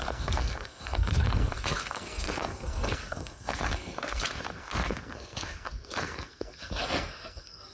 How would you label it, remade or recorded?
remade